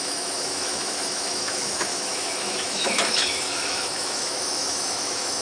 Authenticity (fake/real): fake